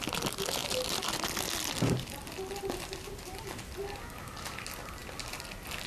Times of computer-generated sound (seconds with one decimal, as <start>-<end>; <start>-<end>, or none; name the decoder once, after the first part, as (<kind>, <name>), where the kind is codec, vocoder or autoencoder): none